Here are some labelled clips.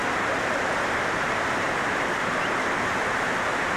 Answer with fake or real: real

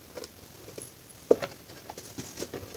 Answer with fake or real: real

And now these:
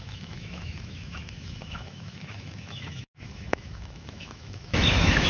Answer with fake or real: fake